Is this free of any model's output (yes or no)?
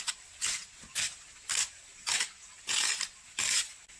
yes